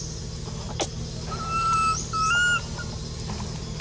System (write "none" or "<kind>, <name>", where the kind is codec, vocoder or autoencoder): none